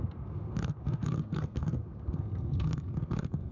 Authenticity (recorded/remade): remade